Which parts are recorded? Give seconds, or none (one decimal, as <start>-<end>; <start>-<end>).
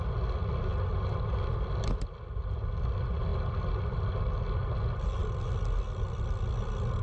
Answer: 0.0-7.0